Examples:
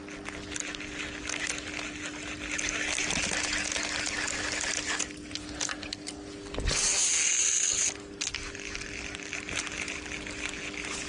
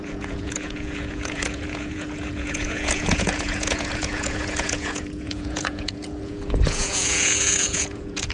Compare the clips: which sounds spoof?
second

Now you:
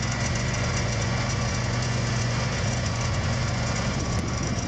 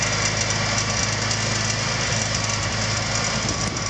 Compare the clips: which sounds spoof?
first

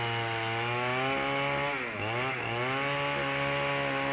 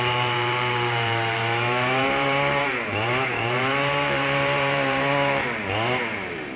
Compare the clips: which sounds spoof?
second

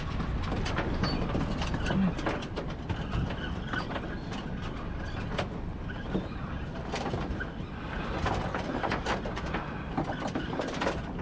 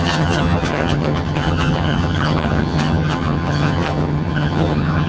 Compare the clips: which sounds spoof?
second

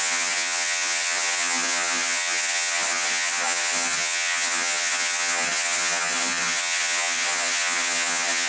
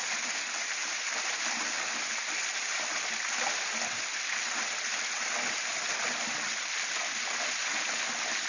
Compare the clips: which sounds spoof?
first